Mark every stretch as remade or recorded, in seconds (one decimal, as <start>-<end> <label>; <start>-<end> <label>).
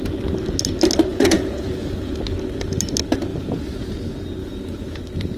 0.0-1.1 recorded; 1.1-2.2 remade; 2.2-3.3 recorded; 3.3-4.0 remade; 4.0-4.4 recorded; 4.4-5.0 remade; 5.0-5.4 recorded